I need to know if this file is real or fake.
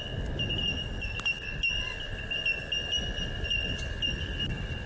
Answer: real